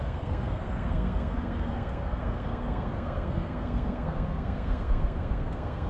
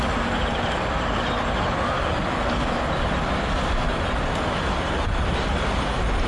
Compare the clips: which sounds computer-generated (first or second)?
first